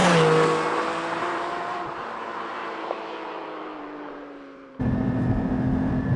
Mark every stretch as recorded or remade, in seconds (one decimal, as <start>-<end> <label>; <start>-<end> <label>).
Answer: 0.0-1.2 recorded; 1.2-6.2 remade